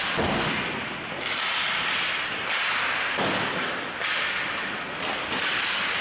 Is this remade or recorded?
recorded